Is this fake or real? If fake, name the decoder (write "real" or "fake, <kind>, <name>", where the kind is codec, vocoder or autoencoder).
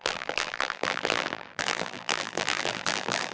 fake, vocoder, BigVGAN v2